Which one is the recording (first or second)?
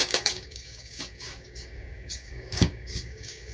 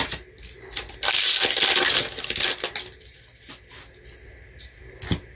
second